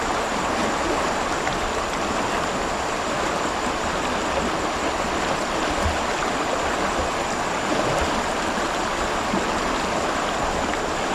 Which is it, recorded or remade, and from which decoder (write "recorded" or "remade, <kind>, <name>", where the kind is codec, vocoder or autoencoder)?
recorded